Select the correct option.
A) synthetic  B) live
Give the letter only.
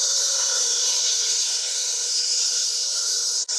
A